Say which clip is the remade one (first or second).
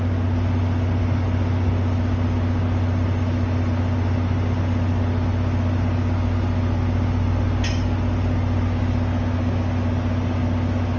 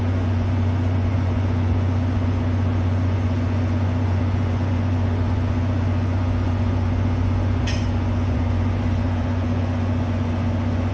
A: second